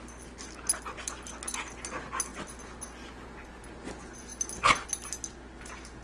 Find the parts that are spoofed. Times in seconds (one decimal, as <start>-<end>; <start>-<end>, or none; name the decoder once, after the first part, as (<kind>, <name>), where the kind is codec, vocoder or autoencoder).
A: none